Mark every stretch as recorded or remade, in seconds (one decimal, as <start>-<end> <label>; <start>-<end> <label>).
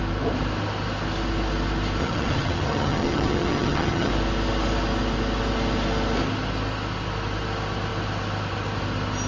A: 0.0-2.0 recorded; 2.0-4.1 remade; 4.1-9.3 recorded